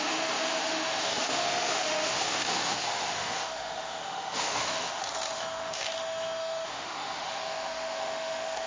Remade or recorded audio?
remade